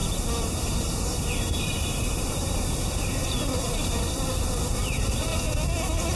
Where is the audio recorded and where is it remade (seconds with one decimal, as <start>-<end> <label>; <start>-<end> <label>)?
0.0-5.3 remade; 5.3-6.2 recorded